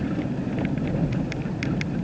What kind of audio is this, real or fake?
real